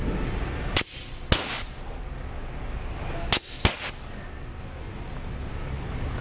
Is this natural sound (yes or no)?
yes